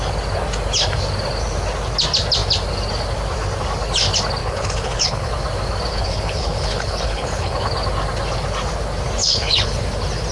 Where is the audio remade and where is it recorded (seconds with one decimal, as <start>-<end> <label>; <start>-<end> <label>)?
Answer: 0.0-4.4 recorded; 4.4-5.3 remade; 5.3-5.9 recorded; 5.9-7.7 remade; 7.7-9.2 recorded; 9.2-9.8 remade; 9.8-10.3 recorded